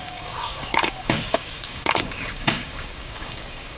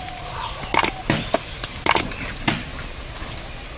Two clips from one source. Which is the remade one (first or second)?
first